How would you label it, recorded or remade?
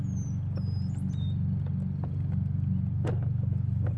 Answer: recorded